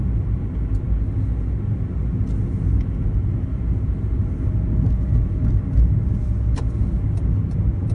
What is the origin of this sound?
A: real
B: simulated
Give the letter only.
A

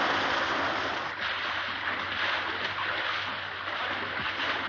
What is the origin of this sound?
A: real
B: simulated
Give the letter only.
A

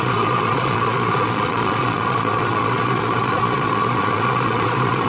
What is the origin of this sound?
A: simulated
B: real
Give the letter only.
A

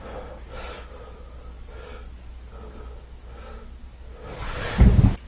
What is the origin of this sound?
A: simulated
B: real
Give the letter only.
B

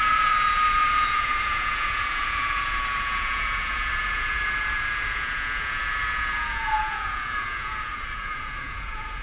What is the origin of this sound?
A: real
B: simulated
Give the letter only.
B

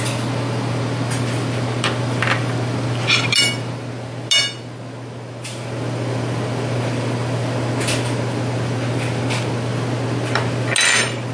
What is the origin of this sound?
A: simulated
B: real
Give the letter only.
B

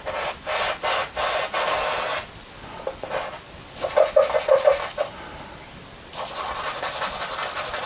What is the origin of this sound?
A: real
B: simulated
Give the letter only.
A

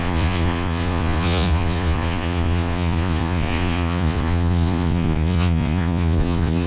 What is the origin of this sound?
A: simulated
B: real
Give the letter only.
A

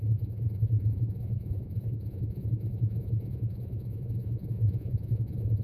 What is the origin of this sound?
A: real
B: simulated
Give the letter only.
B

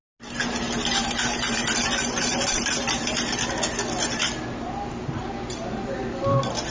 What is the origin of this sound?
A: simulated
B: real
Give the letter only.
B